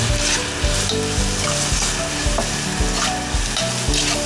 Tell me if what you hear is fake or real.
real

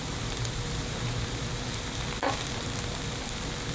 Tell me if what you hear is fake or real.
fake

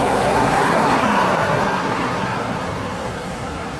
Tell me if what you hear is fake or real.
fake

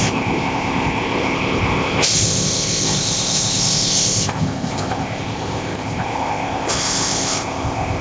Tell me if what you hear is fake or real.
fake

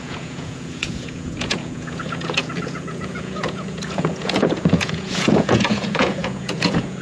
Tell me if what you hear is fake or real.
fake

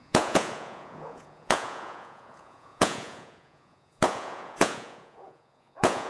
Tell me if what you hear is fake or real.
fake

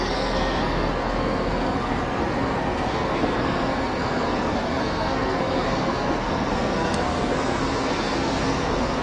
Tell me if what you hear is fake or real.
fake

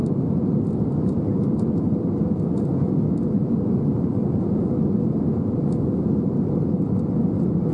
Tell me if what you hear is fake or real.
real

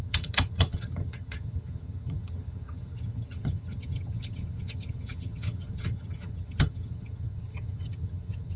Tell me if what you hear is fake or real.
fake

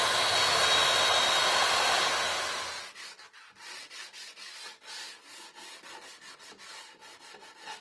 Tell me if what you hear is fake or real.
real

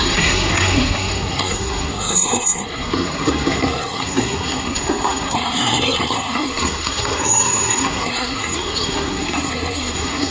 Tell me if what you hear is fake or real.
fake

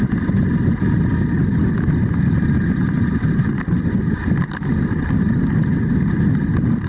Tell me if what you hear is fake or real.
real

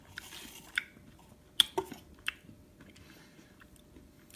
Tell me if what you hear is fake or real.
real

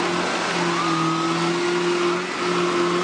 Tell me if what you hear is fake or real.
real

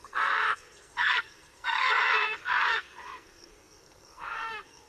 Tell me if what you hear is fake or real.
fake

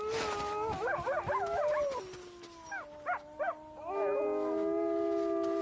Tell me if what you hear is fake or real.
real